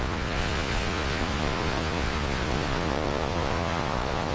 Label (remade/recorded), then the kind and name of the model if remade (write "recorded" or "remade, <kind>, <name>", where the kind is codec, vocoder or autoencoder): remade, vocoder, Vocos